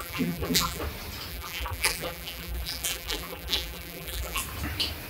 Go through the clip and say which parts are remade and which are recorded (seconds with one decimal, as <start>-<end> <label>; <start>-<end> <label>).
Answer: 0.0-0.8 remade; 0.8-1.3 recorded; 1.3-4.4 remade; 4.4-5.1 recorded